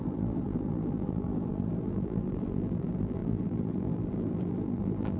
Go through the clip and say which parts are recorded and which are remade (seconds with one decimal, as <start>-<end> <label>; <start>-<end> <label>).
0.0-5.2 remade